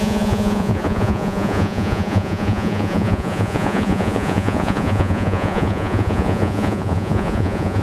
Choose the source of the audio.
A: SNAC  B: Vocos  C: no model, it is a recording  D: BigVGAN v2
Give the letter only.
B